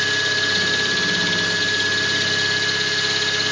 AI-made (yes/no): no